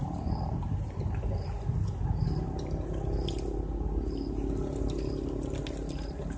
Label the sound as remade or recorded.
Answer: recorded